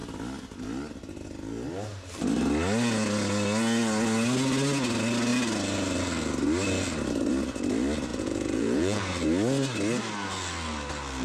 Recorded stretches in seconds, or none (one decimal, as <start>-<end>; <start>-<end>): 0.0-8.1; 9.0-11.2